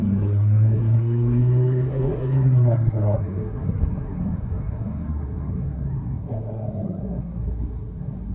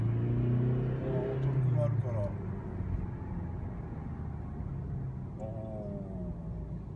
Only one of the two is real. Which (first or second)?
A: second